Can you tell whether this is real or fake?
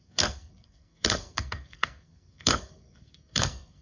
fake